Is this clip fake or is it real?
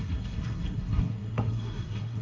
fake